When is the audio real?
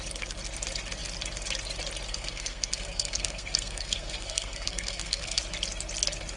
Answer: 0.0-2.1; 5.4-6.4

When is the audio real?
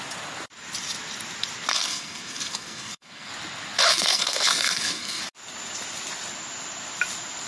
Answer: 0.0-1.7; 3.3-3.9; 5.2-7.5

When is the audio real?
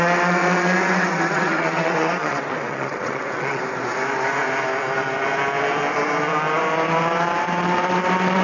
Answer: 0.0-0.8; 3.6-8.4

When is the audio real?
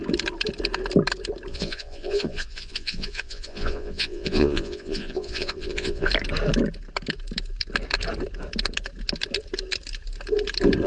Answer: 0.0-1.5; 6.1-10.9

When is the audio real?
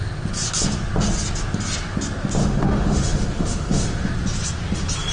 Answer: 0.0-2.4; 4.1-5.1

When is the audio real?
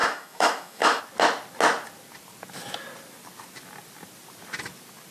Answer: 1.0-5.1